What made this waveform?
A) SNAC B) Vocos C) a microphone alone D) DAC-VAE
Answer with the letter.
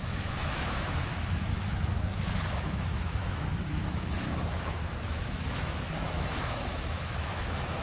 D